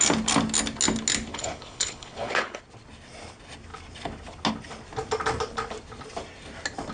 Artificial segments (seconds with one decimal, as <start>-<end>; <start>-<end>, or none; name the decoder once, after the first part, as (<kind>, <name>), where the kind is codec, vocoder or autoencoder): 1.3-2.6 (codec, HILCodec)